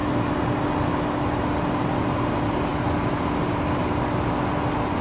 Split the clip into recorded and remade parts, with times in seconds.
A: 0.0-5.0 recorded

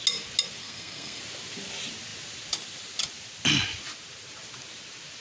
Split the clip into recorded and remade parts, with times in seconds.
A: 0.0-0.6 recorded; 0.6-1.2 remade; 1.2-5.2 recorded